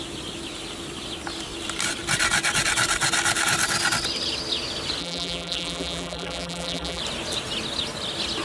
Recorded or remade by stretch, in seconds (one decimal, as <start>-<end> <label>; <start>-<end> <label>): 0.0-5.0 recorded; 5.0-7.0 remade; 7.0-8.4 recorded